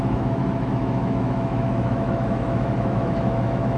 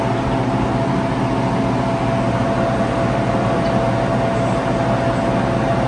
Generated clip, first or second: first